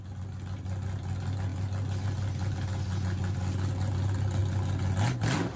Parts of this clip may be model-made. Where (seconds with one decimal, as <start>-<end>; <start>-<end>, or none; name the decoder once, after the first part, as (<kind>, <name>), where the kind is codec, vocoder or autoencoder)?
none